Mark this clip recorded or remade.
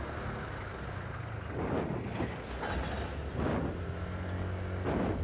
recorded